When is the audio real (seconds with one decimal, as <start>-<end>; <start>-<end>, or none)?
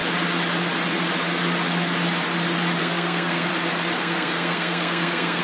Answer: 0.0-2.8; 3.5-4.0